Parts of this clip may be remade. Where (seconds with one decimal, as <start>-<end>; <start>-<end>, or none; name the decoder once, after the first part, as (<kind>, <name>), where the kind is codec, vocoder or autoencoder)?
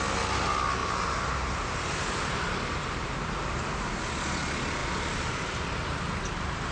0.8-3.4 (vocoder, BigVGAN v2)